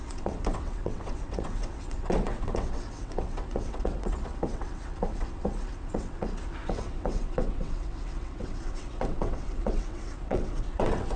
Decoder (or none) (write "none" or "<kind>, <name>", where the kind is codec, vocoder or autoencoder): vocoder, WaveNeXt